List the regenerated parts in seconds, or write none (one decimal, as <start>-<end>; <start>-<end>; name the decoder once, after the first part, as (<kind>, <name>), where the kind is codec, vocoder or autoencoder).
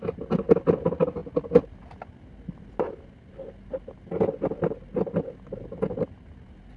none